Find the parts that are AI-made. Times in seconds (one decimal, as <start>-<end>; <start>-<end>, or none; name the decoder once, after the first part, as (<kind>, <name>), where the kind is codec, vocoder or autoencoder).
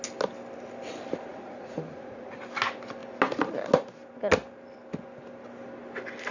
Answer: 1.3-2.4 (vocoder, Vocos)